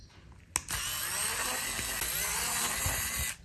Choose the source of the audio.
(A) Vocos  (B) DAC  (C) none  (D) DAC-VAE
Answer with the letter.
C